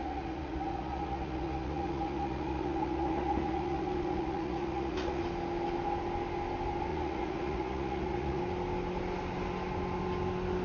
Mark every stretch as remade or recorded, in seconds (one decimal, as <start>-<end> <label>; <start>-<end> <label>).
0.0-5.2 remade; 5.2-6.9 recorded; 6.9-8.4 remade; 8.4-10.6 recorded